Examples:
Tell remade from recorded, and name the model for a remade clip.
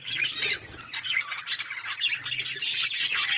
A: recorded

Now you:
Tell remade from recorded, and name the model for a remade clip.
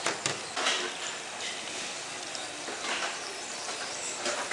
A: recorded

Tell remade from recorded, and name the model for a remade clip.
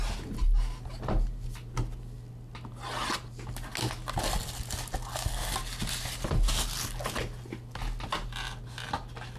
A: recorded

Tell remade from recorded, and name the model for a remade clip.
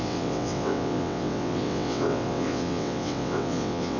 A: remade, vocoder, WaveNeXt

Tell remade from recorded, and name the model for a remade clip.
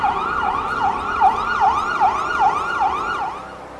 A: recorded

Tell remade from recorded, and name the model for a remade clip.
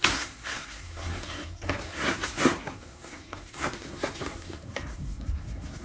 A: remade, codec, SNAC